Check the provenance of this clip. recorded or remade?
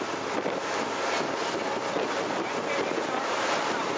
recorded